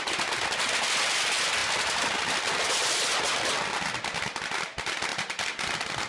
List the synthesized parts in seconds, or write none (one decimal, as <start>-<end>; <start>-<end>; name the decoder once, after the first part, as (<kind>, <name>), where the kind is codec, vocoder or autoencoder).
none